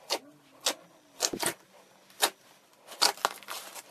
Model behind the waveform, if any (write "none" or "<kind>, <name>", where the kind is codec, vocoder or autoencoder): none